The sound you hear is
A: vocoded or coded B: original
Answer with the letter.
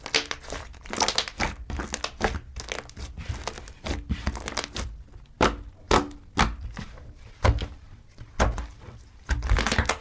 B